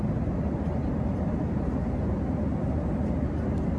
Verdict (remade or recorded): recorded